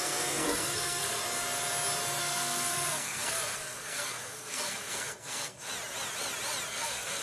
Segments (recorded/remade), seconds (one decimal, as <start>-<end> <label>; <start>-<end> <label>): 0.0-1.2 remade; 1.2-2.2 recorded; 2.2-5.7 remade; 5.7-6.7 recorded; 6.7-7.2 remade